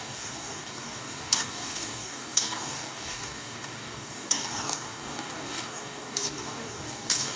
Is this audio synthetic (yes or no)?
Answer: yes